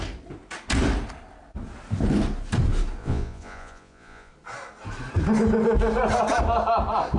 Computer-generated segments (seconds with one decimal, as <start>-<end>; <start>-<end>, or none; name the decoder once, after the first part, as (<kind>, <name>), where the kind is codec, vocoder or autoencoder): 3.0-4.3 (vocoder, Vocos)